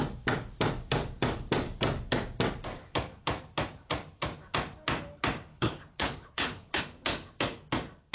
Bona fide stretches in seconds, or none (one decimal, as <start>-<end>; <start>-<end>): 0.0-5.5; 6.8-8.1

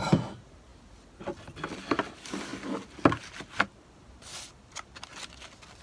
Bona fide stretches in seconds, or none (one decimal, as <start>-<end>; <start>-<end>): 0.0-5.8

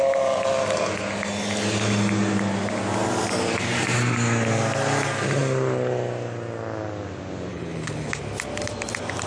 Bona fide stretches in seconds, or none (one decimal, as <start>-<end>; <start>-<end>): 0.0-7.5; 8.1-9.3

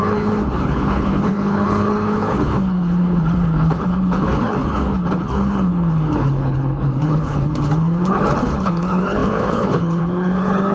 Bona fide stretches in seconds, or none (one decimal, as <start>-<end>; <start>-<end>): none

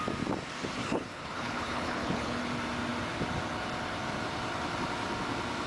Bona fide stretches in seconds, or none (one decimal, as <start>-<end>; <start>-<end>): 0.0-0.8; 2.4-5.7

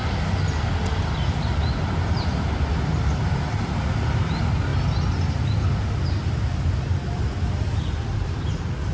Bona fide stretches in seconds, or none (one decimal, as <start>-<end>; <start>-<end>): 0.0-8.9